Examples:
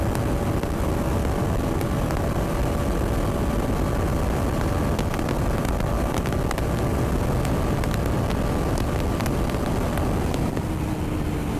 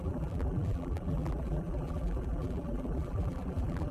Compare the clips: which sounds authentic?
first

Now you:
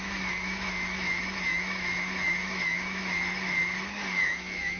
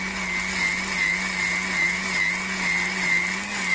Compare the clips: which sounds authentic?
second